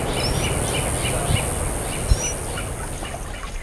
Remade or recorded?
recorded